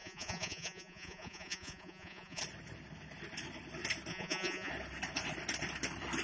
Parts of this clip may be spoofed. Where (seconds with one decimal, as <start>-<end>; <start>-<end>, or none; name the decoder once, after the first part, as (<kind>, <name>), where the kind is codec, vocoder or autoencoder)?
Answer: 0.0-2.4 (vocoder, Vocos); 4.1-4.7